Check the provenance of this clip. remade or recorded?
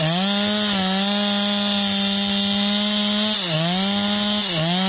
recorded